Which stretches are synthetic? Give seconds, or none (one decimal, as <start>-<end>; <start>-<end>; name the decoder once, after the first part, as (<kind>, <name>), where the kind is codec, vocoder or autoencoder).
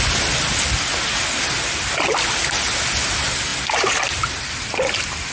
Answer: none